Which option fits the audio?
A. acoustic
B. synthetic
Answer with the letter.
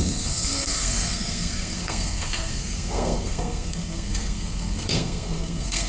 B